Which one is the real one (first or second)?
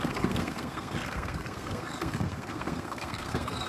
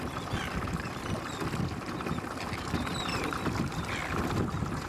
second